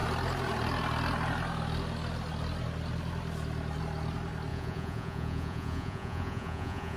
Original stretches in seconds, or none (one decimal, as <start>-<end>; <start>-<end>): 0.0-4.5